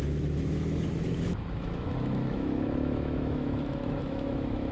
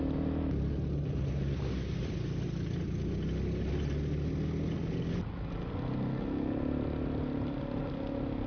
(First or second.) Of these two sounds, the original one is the second